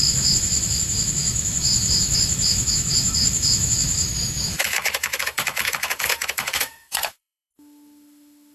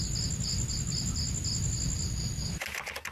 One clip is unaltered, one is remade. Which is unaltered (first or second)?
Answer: second